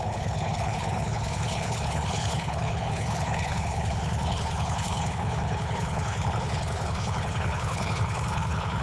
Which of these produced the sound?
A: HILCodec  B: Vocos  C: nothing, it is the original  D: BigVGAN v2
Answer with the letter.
A